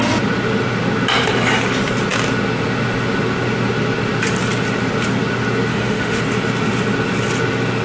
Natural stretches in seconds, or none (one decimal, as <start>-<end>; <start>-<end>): 0.0-5.7; 6.2-7.8